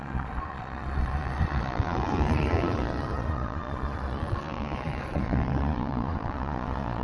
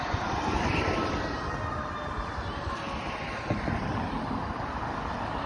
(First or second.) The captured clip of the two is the second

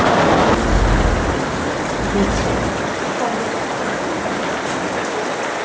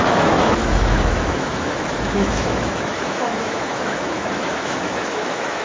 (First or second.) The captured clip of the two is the first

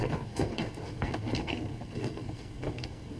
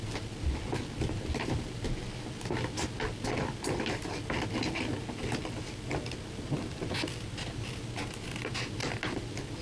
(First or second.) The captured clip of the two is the second